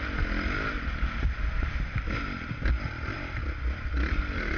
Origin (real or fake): fake